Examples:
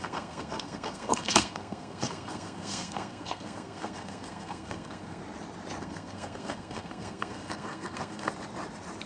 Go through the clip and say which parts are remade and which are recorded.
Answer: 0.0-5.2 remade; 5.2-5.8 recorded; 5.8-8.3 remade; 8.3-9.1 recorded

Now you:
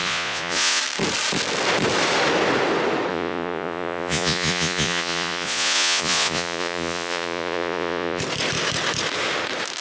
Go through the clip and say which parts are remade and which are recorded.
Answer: 0.0-0.8 remade; 0.8-3.1 recorded; 3.1-8.2 remade; 8.2-9.8 recorded

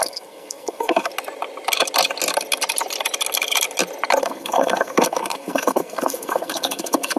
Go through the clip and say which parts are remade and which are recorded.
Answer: 0.0-1.1 remade; 1.1-4.2 recorded; 4.2-7.2 remade

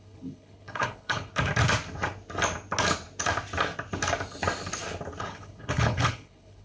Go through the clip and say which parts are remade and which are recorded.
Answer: 0.0-1.3 remade; 1.3-5.2 recorded; 5.2-6.6 remade

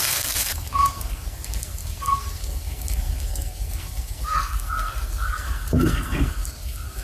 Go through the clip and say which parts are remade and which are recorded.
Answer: 0.0-7.0 remade